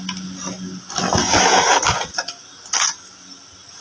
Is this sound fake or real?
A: real